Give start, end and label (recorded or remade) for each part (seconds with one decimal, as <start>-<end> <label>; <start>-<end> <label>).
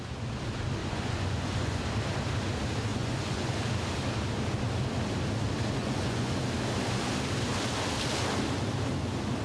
0.0-0.8 recorded; 0.8-1.8 remade; 1.8-2.9 recorded; 2.9-3.5 remade; 3.5-5.8 recorded; 5.8-6.4 remade; 6.4-9.4 recorded